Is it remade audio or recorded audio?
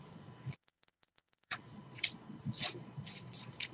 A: remade